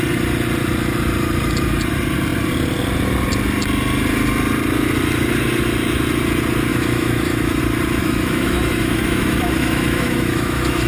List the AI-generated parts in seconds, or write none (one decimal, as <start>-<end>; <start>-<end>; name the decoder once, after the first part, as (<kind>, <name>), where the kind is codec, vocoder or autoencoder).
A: 6.7-7.6 (autoencoder, DAC-VAE); 8.0-10.9